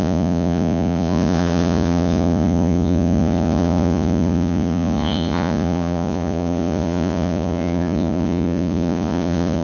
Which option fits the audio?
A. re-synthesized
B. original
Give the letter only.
A